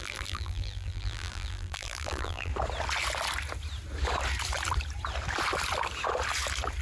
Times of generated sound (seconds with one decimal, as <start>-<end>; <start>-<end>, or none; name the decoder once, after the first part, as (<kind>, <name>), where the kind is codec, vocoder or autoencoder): 0.0-2.5 (vocoder, BigVGAN v2)